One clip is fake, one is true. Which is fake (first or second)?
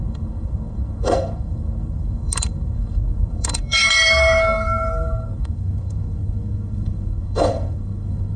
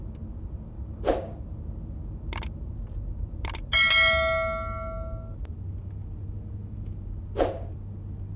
first